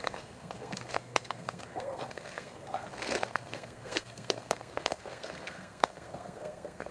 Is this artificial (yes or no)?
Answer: yes